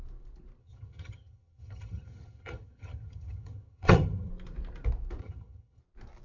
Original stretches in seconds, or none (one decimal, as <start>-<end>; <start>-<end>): 0.0-0.6; 4.3-5.2; 5.8-6.2